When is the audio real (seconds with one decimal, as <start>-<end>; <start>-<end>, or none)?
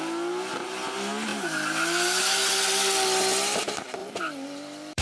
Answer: 0.0-4.0